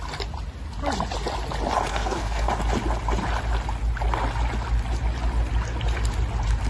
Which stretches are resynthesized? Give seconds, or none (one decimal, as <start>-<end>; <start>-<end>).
1.9-2.5

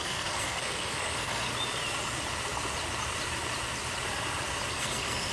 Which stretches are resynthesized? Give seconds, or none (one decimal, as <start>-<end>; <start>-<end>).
0.0-1.5; 4.7-5.3

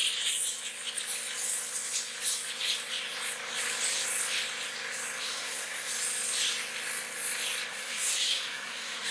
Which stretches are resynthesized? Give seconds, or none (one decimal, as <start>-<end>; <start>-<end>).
5.2-5.9; 7.7-9.1

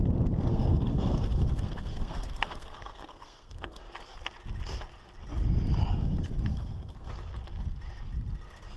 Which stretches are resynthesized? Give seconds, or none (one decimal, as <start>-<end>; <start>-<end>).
0.5-3.8; 6.5-7.1

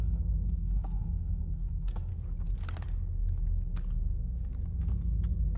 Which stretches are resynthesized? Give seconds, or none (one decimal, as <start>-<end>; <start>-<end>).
0.0-2.1

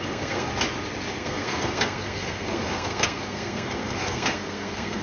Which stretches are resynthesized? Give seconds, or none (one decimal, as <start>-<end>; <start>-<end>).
0.0-0.5; 1.1-5.0